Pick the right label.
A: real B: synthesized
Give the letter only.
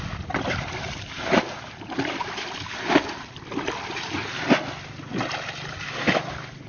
A